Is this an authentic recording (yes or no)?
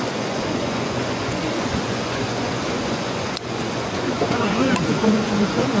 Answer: no